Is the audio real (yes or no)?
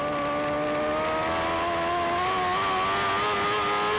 yes